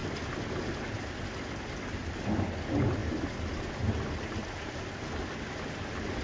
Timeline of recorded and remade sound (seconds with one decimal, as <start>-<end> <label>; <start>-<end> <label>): 0.0-6.2 recorded